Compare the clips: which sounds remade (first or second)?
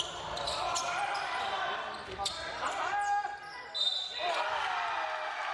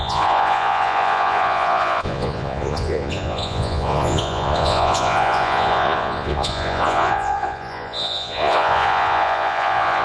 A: second